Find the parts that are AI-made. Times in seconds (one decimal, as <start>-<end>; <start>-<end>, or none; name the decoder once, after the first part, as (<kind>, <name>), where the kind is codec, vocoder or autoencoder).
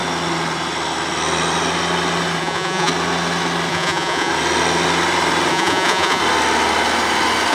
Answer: 2.4-2.9 (vocoder, Vocos); 3.7-4.3; 5.5-6.2